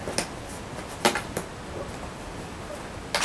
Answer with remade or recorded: recorded